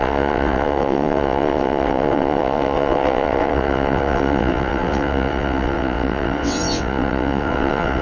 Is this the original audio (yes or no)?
no